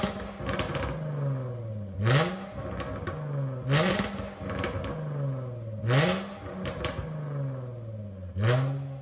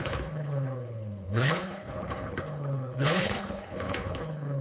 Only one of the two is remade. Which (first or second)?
second